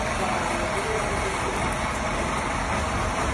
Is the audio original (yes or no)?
yes